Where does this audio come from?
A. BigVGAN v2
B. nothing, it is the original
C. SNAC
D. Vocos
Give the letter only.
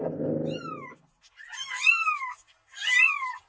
B